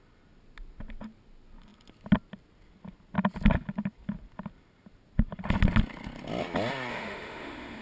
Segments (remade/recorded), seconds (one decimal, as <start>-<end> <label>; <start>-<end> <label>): 0.0-6.9 recorded; 6.9-7.8 remade